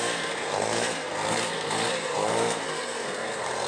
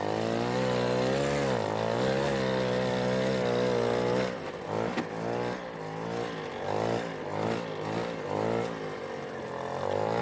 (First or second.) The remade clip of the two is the first